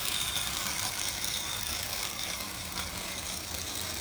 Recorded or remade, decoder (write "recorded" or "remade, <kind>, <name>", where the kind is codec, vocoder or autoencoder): remade, codec, DAC